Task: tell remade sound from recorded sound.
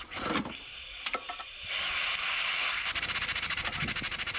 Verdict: recorded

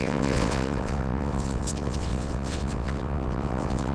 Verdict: remade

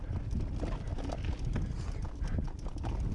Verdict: recorded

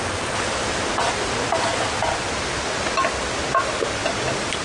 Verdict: recorded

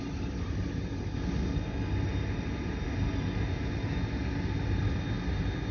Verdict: recorded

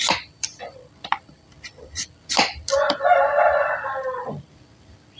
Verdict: recorded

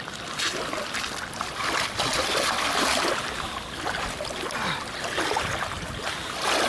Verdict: recorded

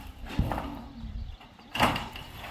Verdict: recorded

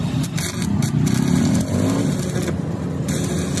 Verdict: recorded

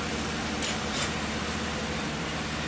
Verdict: remade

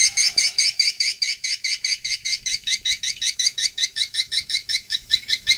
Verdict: remade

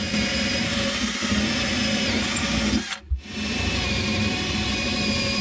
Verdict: recorded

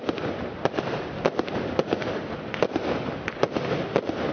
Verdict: recorded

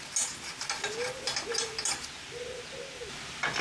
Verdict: recorded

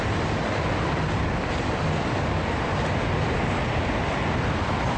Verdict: recorded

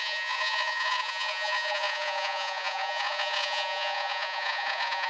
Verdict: remade